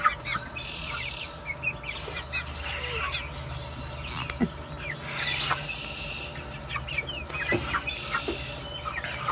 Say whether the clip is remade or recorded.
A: recorded